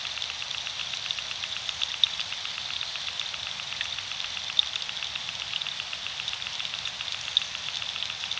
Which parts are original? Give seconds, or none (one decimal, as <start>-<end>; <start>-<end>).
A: 0.0-8.4